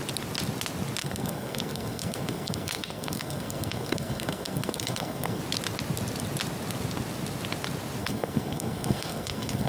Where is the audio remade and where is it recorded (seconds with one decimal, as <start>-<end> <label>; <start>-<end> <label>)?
0.0-1.0 recorded; 1.0-5.4 remade; 5.4-8.0 recorded; 8.0-9.7 remade

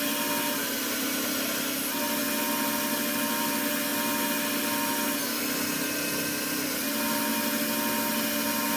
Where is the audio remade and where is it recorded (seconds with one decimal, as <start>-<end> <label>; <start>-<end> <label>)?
0.0-8.8 recorded

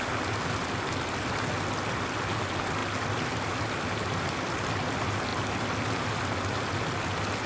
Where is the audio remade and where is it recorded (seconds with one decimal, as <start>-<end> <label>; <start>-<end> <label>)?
0.0-7.5 recorded

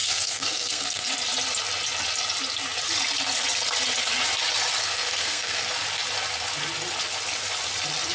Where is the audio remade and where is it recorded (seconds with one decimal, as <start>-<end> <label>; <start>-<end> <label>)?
0.0-1.1 remade; 1.1-4.8 recorded; 4.8-5.7 remade; 5.7-8.1 recorded

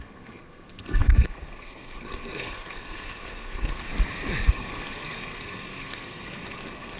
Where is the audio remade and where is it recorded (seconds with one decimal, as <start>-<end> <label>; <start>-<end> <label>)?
0.0-3.9 remade; 3.9-4.5 recorded; 4.5-7.0 remade

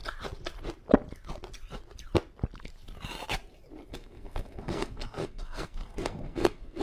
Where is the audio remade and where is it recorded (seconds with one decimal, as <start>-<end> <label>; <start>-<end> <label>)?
0.0-3.9 recorded; 3.9-6.8 remade

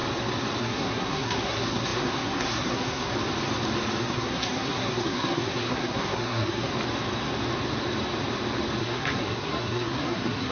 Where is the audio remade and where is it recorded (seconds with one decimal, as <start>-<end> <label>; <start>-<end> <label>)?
0.0-0.6 recorded; 0.6-3.1 remade; 3.1-4.0 recorded; 4.0-6.7 remade; 6.7-8.8 recorded; 8.8-10.5 remade

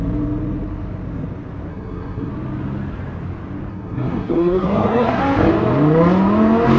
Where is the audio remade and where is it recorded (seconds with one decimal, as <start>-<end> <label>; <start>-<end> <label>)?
0.0-1.7 recorded; 1.7-2.3 remade; 2.3-3.7 recorded; 3.7-5.2 remade; 5.2-6.8 recorded